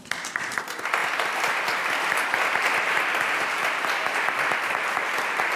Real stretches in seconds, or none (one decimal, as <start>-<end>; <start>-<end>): 1.0-2.9